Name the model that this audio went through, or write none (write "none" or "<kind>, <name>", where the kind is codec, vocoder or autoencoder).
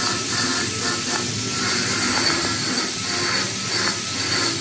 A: none